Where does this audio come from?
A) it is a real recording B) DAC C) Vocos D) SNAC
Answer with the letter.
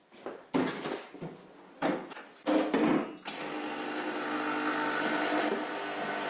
A